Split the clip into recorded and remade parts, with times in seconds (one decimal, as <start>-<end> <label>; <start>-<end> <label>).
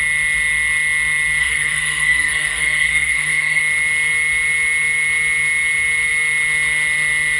0.0-1.4 recorded; 1.4-3.6 remade; 3.6-7.4 recorded